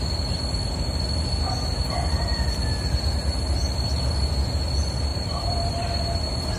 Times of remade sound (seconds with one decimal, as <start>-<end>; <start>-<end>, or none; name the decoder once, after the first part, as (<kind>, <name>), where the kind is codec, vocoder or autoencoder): 5.1-6.0 (vocoder, BigVGAN v2)